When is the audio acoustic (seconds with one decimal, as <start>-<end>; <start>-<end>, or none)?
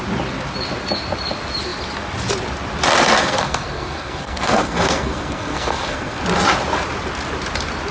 0.0-3.2; 6.2-7.9